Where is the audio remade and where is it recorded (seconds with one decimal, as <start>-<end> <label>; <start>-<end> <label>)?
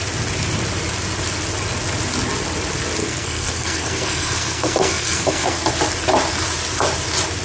0.0-3.0 recorded; 3.0-5.7 remade; 5.7-7.4 recorded